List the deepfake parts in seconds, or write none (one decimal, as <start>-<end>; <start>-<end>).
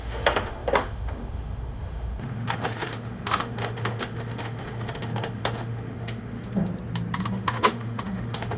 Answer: 0.0-6.7; 7.2-8.6